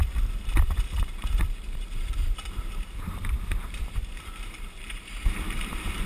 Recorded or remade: remade